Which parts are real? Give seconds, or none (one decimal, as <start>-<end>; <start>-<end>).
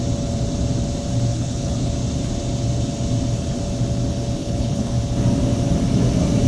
0.0-1.3; 1.9-4.4; 4.9-6.5